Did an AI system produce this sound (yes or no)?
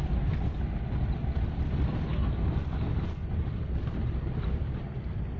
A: no